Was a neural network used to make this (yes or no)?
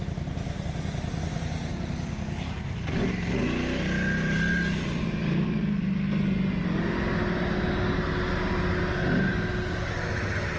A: no